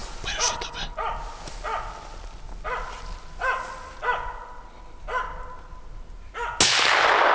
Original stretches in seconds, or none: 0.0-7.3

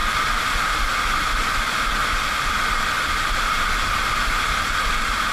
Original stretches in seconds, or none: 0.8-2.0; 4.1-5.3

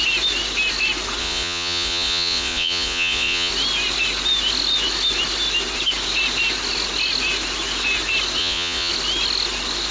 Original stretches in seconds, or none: 0.0-1.2; 3.5-8.4; 8.9-9.9

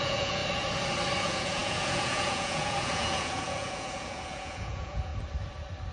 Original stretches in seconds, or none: 0.4-1.2; 5.1-5.9